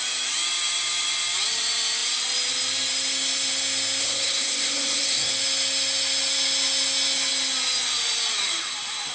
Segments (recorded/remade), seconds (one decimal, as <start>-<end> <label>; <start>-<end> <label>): 0.0-4.0 recorded; 4.0-5.3 remade; 5.3-9.1 recorded